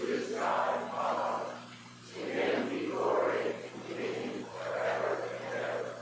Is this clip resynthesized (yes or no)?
yes